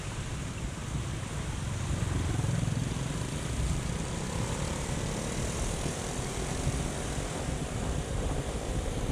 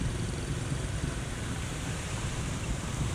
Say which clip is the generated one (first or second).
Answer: second